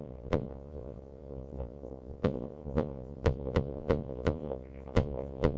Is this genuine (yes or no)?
no